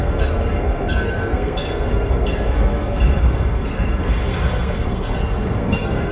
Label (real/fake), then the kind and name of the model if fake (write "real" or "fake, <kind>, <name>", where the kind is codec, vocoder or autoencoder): fake, codec, SNAC